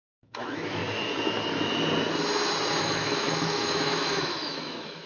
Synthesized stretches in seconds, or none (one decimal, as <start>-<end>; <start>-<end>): 0.0-0.8; 2.8-5.1